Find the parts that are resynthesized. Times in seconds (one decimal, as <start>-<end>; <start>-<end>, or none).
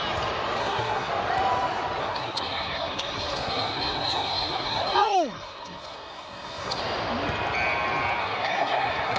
0.6-1.1; 2.0-6.8; 8.2-9.2